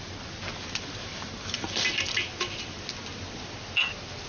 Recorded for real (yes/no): yes